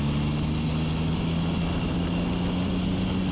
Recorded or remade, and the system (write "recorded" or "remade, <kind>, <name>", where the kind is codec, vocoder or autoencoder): recorded